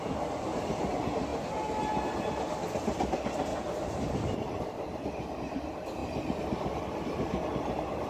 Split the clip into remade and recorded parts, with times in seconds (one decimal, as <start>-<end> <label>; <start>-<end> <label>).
0.0-8.1 recorded